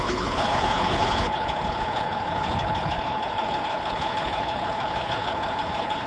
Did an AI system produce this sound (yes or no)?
yes